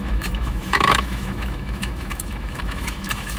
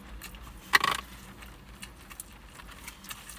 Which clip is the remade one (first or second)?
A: first